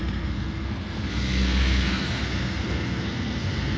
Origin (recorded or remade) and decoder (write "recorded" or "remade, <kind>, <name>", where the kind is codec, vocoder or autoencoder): remade, codec, SNAC